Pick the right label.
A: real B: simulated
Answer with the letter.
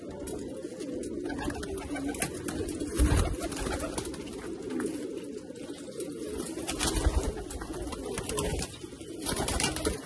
A